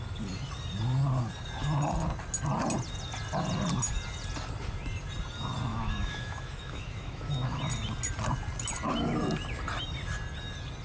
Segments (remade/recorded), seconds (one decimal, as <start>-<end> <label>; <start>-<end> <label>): 0.0-5.7 recorded; 5.7-7.6 remade; 7.6-10.8 recorded